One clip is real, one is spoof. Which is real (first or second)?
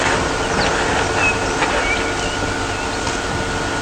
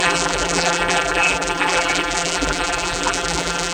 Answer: first